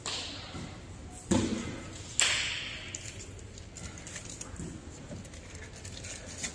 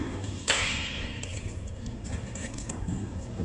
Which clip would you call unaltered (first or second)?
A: first